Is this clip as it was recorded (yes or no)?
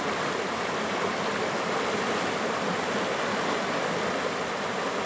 yes